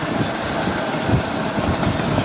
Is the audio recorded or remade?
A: recorded